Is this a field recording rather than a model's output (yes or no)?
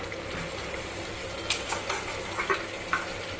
yes